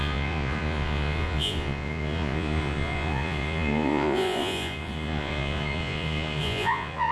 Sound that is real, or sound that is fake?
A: fake